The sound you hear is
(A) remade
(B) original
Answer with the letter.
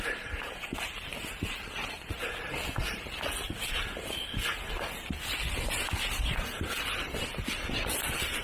A